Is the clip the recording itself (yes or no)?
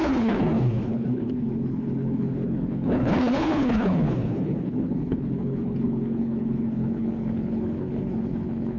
no